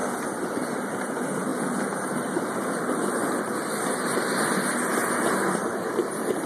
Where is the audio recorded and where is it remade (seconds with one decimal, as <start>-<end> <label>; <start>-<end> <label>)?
0.0-1.0 recorded; 1.0-4.9 remade; 4.9-5.5 recorded; 5.5-6.5 remade